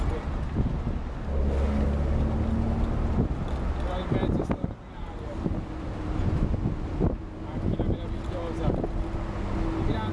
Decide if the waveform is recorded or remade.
recorded